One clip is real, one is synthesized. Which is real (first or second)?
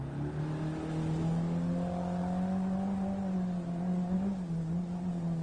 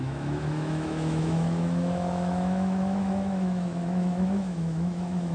first